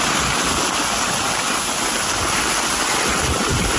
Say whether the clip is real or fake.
real